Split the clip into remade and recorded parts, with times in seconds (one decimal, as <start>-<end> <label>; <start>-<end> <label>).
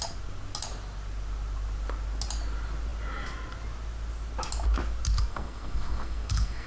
0.0-5.3 recorded; 5.3-6.7 remade